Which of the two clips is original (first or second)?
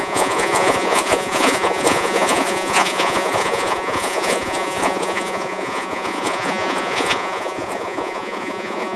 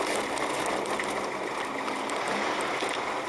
second